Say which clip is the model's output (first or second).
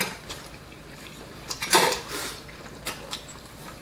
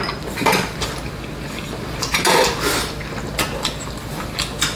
first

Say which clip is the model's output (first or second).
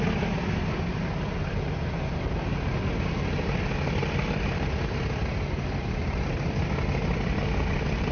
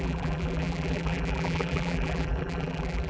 second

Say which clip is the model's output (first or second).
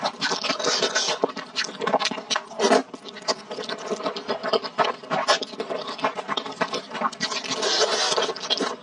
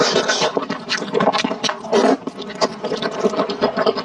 second